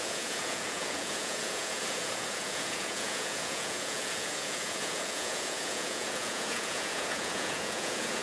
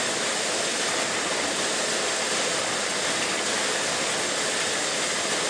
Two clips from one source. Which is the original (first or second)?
second